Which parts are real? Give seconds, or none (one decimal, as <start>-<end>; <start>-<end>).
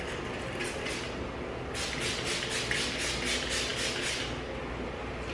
0.0-5.3